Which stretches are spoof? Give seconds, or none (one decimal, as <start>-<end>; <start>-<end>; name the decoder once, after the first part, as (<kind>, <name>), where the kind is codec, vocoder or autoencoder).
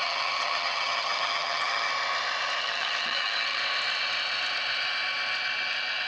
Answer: 0.0-1.9 (vocoder, HiFi-GAN); 2.6-3.6